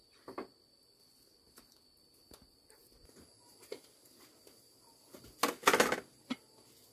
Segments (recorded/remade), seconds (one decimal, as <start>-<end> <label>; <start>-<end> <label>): 0.0-6.9 recorded